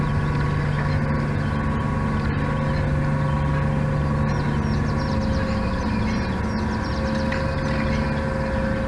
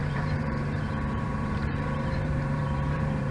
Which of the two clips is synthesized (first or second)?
second